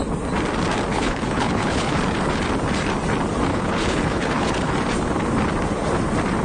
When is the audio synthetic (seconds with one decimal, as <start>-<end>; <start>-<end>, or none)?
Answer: 0.9-2.0; 3.5-4.7